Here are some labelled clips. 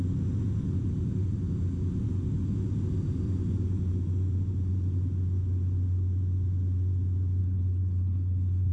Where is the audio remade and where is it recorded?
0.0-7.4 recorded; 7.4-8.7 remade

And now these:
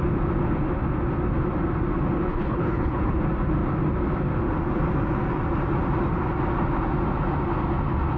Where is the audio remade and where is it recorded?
0.0-2.3 recorded; 2.3-3.1 remade; 3.1-8.2 recorded

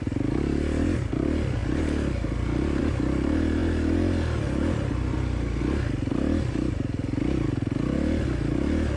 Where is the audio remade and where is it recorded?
0.0-9.0 recorded

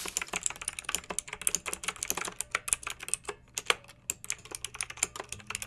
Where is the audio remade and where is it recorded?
0.0-5.7 recorded

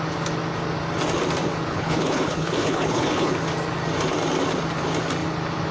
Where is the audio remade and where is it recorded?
0.0-1.7 recorded; 1.7-3.3 remade; 3.3-5.7 recorded